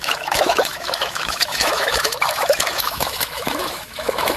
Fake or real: fake